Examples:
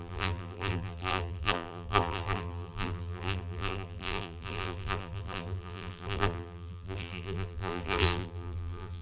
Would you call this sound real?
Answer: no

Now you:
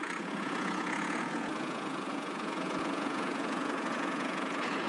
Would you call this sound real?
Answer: no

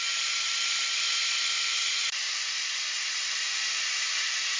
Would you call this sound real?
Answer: no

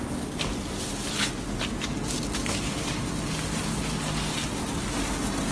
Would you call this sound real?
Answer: yes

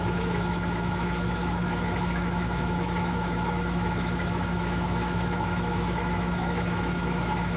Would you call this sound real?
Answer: no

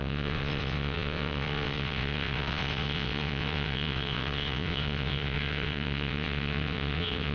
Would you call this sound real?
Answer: no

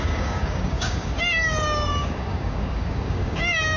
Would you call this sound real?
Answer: no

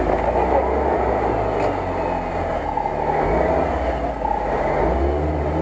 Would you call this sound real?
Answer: yes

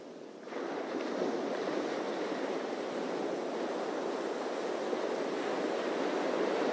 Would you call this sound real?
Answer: yes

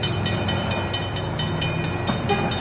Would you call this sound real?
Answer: yes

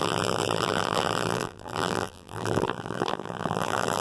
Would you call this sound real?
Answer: no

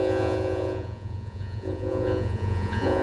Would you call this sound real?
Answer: no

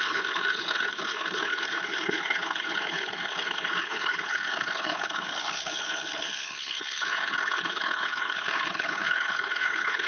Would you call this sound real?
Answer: no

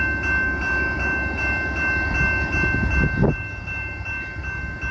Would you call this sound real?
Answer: yes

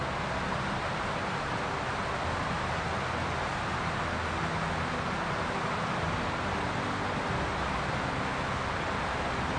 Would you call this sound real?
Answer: yes